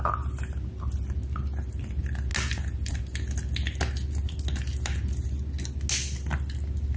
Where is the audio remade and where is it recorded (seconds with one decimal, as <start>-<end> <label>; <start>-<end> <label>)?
0.0-7.0 recorded